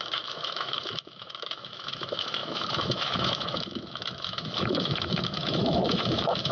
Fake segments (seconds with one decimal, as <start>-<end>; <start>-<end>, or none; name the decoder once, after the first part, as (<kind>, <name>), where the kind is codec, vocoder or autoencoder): 0.0-6.5 (autoencoder, DAC-VAE)

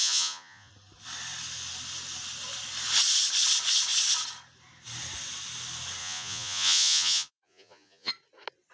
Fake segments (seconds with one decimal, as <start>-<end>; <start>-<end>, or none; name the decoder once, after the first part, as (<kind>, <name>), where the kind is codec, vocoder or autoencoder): 0.0-0.7 (vocoder, Vocos); 6.0-8.1

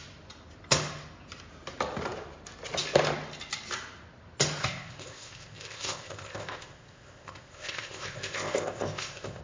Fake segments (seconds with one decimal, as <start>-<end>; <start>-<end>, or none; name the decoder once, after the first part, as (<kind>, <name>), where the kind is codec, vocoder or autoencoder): 4.6-9.4 (codec, ZipCodec)

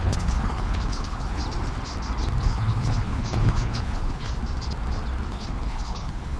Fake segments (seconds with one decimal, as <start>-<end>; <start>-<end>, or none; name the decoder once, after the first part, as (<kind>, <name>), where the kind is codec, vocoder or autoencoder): 0.0-1.4 (codec, HILCodec); 2.4-4.4; 5.3-6.4

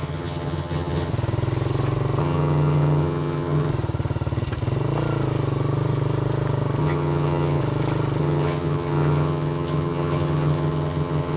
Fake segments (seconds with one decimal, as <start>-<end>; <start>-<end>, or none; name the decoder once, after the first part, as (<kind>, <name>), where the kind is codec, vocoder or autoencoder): 0.0-1.1 (vocoder, HiFi-GAN); 2.2-3.7; 6.8-7.6; 8.2-11.4

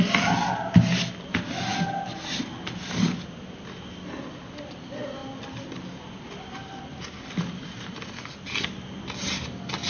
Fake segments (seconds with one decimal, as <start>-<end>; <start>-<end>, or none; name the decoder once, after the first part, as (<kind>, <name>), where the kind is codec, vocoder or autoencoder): none

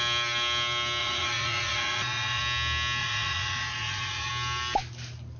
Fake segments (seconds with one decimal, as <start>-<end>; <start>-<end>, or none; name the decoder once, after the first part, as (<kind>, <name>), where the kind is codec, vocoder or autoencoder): 1.0-2.4 (vocoder, Vocos); 3.0-4.3

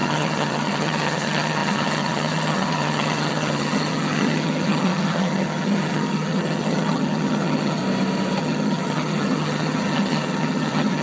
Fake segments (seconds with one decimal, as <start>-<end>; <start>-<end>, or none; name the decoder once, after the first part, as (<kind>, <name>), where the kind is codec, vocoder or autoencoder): 0.0-7.8 (vocoder, HiFi-GAN); 8.4-11.0